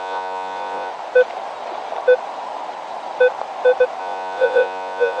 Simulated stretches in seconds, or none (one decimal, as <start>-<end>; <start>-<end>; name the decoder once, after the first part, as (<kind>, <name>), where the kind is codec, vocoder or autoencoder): 0.0-0.9 (vocoder, Vocos); 4.0-5.2